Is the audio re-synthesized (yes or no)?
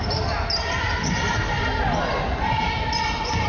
no